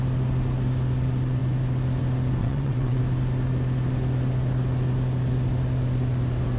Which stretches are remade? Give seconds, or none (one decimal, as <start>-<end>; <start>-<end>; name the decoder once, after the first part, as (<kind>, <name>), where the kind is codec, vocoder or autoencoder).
2.4-3.0 (vocoder, WaveNeXt)